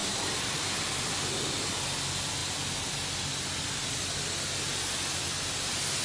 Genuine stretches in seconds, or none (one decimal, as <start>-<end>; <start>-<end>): 0.9-6.0